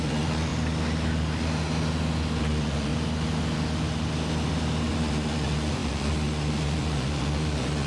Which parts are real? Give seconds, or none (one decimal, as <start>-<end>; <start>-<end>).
0.5-2.4; 2.9-4.9